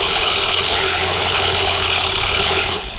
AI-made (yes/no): yes